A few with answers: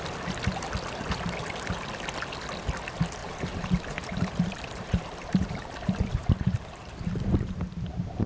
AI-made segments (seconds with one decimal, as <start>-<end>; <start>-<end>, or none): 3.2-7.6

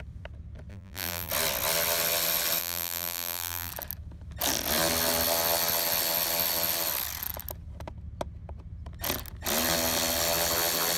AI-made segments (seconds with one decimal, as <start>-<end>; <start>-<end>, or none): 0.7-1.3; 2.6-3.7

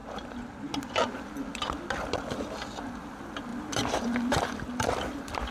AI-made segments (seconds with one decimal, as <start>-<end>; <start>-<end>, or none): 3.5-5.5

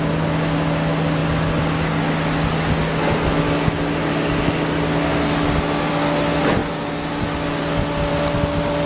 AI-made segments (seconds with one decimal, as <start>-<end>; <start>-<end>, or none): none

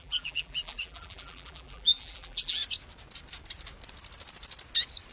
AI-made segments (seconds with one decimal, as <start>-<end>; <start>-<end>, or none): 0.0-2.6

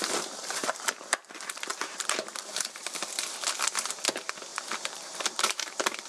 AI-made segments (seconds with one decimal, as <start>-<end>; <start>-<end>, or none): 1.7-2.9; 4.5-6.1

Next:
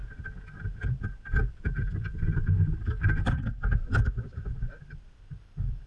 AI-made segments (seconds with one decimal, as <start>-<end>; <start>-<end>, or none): 0.6-5.9

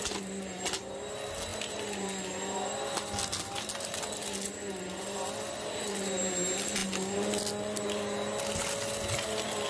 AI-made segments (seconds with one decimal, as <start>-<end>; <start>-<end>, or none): none